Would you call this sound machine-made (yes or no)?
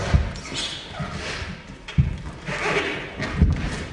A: no